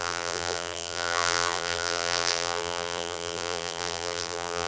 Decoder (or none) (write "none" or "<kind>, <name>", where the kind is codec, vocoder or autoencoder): vocoder, BigVGAN v2